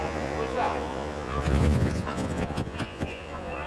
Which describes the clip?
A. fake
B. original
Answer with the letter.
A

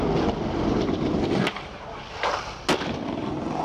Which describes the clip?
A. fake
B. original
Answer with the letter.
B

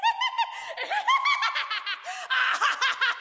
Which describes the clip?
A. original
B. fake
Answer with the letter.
A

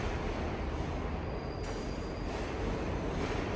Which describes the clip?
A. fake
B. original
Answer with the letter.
B